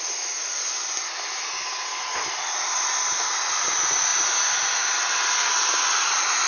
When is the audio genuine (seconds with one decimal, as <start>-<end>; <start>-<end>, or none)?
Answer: 0.0-6.5